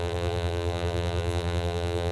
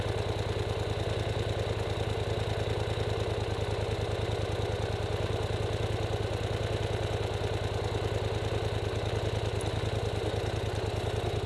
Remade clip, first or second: first